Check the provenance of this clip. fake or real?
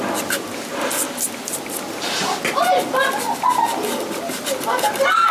real